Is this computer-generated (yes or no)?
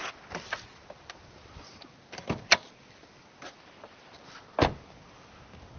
no